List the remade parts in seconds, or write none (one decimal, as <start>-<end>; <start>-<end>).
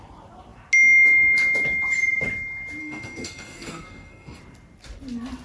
2.8-4.4